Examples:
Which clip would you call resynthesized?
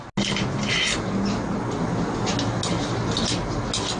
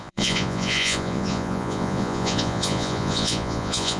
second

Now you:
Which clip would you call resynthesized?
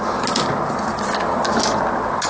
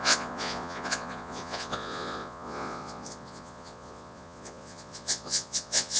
second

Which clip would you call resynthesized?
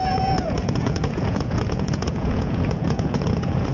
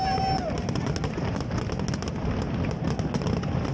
first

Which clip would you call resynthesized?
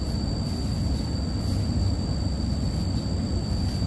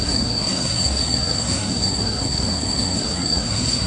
second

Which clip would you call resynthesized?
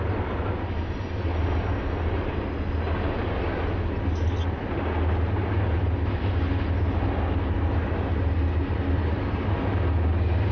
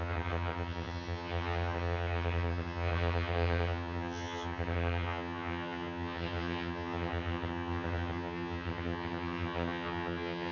second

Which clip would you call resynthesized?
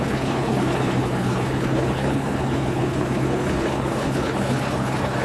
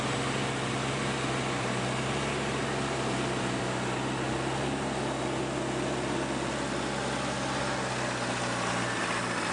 first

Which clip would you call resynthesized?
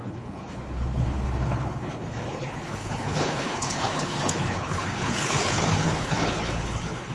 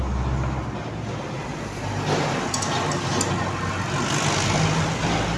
first